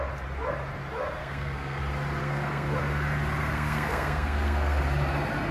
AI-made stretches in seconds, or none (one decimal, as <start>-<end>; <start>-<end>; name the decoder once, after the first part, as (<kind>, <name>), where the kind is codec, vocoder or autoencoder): 1.2-1.8 (codec, SNAC); 2.2-2.8; 3.4-4.8